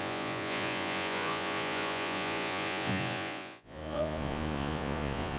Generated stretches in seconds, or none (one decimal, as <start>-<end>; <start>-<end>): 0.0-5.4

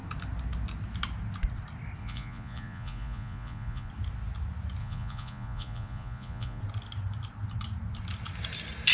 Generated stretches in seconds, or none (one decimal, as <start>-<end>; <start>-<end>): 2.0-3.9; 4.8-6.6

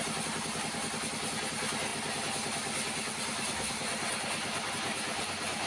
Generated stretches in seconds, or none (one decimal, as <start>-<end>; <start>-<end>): none